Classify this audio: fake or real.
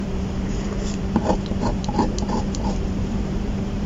fake